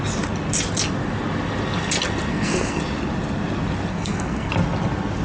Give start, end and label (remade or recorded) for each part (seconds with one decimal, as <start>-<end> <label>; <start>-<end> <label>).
0.0-2.3 recorded; 2.3-2.8 remade; 2.8-3.9 recorded; 3.9-4.5 remade; 4.5-5.2 recorded